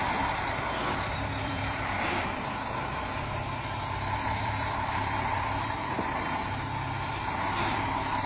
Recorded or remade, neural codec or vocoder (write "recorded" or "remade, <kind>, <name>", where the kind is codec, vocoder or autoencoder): remade, vocoder, BigVGAN v2